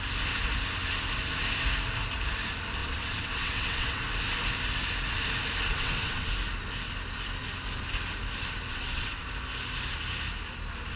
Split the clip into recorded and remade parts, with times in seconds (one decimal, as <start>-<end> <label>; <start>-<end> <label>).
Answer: 0.0-2.8 recorded; 2.8-4.0 remade; 4.0-5.7 recorded; 5.7-6.3 remade; 6.3-8.7 recorded; 8.7-9.2 remade; 9.2-11.0 recorded